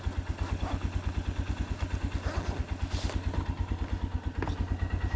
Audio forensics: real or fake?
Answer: real